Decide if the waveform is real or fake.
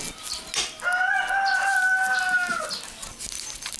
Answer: real